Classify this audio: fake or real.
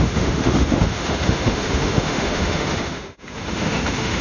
fake